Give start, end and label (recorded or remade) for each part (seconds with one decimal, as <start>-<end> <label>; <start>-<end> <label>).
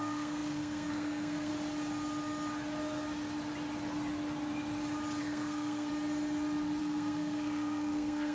0.0-1.5 remade; 1.5-5.2 recorded; 5.2-5.9 remade; 5.9-6.8 recorded; 6.8-8.3 remade